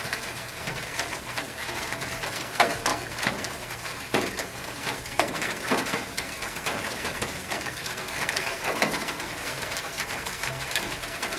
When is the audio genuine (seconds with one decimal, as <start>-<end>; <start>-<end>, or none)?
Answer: none